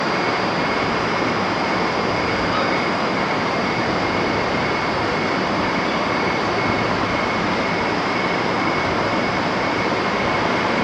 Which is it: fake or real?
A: fake